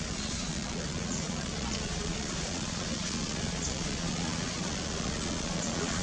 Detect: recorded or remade remade